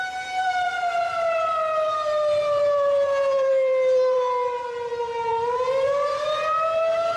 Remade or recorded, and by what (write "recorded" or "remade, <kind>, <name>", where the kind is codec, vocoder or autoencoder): remade, vocoder, BigVGAN v2